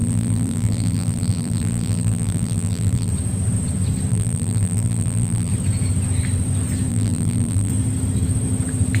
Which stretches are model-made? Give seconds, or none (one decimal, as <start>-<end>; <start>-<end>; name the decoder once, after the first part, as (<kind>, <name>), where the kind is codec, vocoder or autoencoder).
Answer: 0.0-3.1 (vocoder, BigVGAN v2); 4.1-5.5; 6.9-7.7